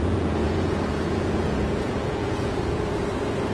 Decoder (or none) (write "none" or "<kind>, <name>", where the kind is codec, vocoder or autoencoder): vocoder, Vocos